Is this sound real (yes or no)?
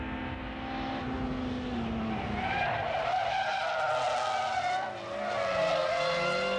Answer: yes